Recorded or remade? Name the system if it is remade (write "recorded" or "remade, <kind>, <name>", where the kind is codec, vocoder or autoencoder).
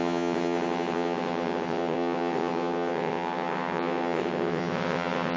remade, vocoder, WaveNeXt